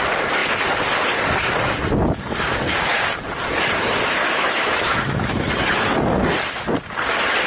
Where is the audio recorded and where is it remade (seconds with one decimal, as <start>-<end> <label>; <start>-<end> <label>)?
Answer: 0.0-4.2 recorded; 4.2-5.5 remade; 5.5-7.5 recorded